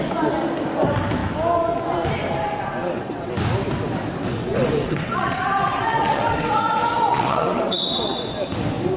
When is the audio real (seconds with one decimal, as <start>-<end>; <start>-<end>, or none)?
0.0-2.8; 3.3-4.2; 8.3-9.0